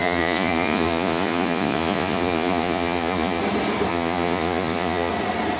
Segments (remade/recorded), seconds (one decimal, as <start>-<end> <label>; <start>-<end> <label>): 0.0-3.4 remade; 3.4-3.9 recorded; 3.9-5.1 remade; 5.1-5.6 recorded